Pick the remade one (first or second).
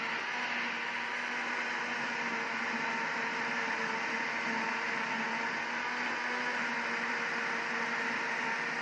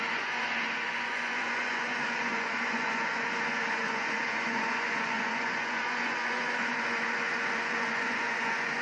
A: second